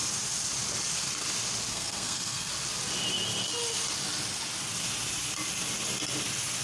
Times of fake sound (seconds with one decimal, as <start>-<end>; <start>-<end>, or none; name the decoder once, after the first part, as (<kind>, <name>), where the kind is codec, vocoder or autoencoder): 1.7-2.5 (codec, SNAC)